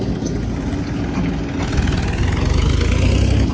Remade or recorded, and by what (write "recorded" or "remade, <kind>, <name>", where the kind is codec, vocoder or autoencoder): recorded